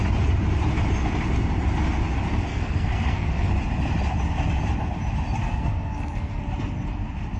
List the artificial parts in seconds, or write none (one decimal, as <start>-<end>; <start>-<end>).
2.5-3.5; 5.4-6.4